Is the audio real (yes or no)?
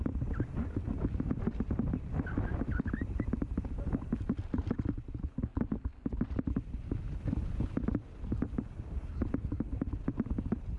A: yes